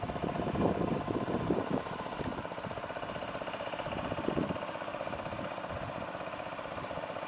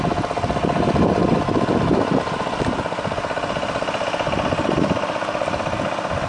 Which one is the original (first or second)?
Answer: second